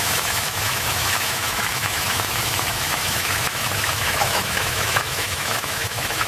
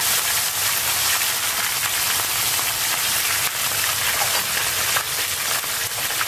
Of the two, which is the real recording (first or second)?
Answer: second